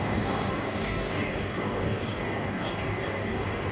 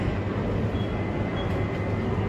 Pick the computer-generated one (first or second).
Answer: first